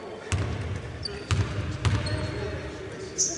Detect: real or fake real